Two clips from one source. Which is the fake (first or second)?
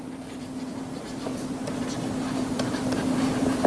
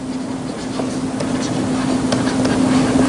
first